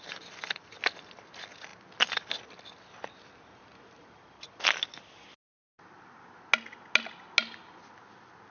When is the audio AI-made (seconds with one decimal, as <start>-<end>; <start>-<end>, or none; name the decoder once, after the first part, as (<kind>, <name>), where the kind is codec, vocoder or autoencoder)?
none